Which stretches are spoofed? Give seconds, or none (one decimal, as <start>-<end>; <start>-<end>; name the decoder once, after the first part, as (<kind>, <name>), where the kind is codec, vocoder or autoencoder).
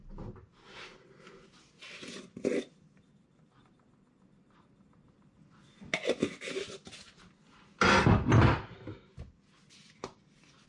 none